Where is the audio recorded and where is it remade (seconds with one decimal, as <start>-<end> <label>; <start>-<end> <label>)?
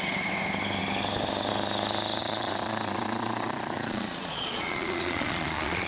0.0-2.2 recorded; 2.2-5.9 remade